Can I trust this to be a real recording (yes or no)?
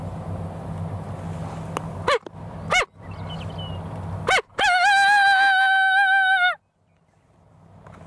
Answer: yes